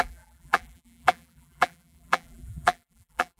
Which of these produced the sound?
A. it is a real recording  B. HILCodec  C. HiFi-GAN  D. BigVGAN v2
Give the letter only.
D